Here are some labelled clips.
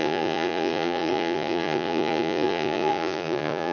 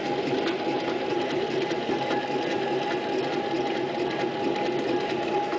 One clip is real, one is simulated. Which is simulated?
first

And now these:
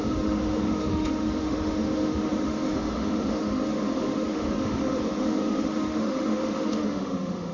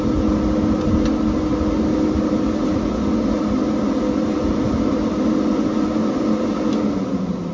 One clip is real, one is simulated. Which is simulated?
first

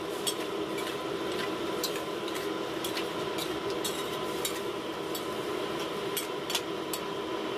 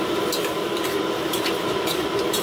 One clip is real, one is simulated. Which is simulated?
second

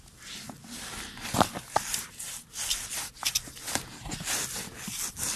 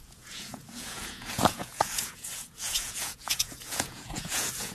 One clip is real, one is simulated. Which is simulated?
second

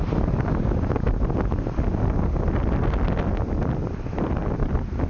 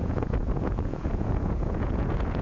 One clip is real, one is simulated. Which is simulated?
second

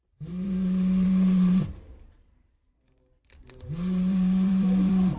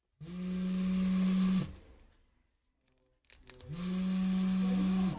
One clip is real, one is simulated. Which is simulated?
first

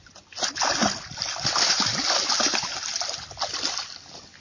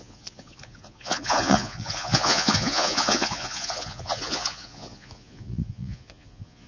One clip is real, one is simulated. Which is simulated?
second